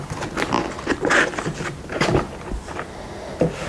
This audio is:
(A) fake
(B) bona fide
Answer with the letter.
B